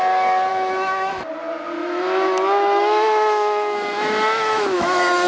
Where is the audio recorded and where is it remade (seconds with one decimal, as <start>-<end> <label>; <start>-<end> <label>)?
0.0-0.5 recorded; 0.5-1.2 remade; 1.2-1.8 recorded; 1.8-5.3 remade